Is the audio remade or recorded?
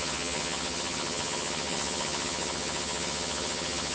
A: remade